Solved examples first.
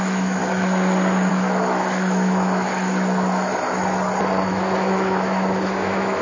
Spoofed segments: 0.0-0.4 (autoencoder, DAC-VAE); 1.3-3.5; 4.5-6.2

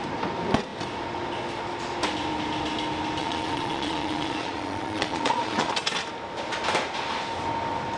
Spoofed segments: 3.2-5.7 (vocoder, Vocos)

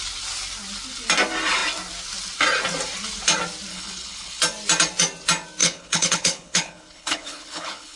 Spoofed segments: 3.7-4.4 (codec, HILCodec); 5.6-8.0